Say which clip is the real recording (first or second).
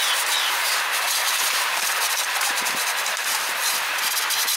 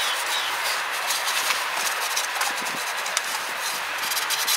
second